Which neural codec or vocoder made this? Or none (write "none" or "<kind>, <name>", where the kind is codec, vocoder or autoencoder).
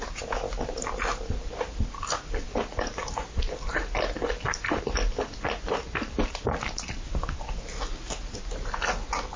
none